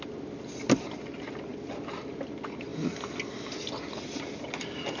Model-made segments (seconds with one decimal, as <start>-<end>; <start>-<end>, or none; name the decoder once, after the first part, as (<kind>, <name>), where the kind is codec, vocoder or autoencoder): none